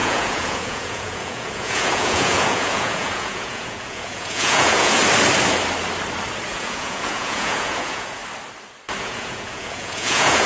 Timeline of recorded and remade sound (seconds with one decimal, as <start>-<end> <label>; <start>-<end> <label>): 0.0-5.0 remade; 5.0-6.5 recorded; 6.5-8.2 remade; 8.2-9.0 recorded; 9.0-10.5 remade